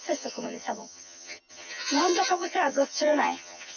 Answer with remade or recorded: remade